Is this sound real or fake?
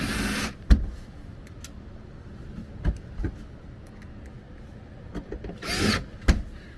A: real